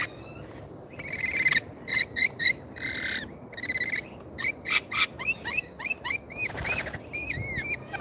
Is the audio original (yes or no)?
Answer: yes